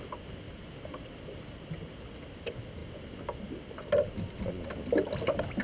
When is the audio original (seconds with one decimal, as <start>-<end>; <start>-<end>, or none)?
0.0-5.6